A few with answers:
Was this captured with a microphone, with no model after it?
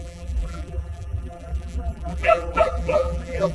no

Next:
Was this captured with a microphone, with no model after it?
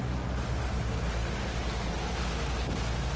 yes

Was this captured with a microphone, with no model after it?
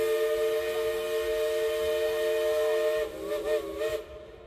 yes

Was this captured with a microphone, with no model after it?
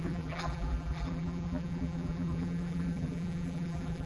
no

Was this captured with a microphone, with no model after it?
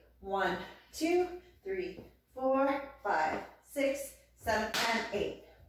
yes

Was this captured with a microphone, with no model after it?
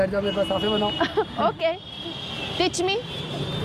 yes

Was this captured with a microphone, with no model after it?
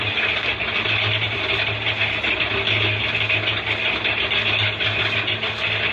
yes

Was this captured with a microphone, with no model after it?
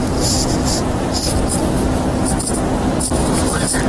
yes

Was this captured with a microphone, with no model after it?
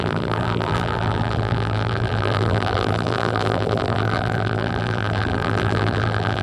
no